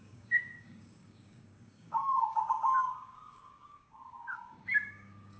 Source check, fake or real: fake